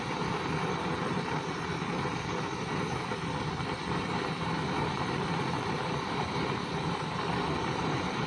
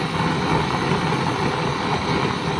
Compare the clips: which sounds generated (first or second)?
first